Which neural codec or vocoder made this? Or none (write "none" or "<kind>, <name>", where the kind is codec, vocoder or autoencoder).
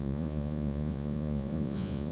vocoder, Vocos